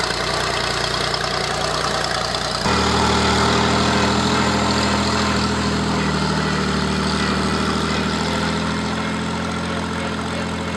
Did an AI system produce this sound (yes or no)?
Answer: no